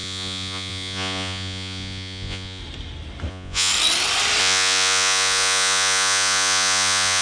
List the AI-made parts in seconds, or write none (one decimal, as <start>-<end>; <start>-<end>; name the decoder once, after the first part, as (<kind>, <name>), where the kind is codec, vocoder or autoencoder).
0.0-2.6 (vocoder, Vocos); 3.3-3.7; 4.4-7.2